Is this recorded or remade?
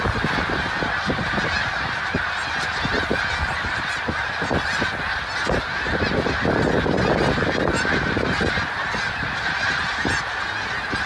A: recorded